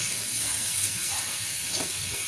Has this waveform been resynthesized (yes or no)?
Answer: yes